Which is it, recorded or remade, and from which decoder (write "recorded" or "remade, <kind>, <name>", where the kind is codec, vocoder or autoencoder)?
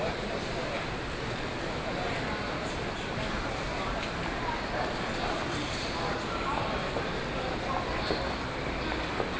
recorded